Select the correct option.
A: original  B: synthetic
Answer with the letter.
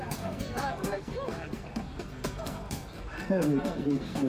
B